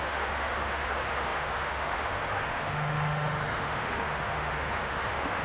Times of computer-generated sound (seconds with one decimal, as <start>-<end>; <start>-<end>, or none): 0.0-5.4